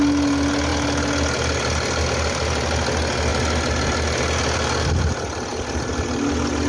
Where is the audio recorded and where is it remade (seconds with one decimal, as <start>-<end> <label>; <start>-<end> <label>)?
0.0-6.7 recorded